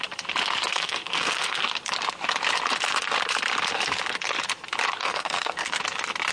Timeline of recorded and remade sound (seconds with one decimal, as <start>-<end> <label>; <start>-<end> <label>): 0.0-0.7 recorded; 0.7-1.7 remade; 1.7-5.0 recorded; 5.0-5.8 remade; 5.8-6.3 recorded